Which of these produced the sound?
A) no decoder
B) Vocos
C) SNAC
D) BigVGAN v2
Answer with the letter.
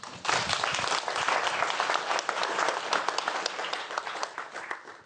A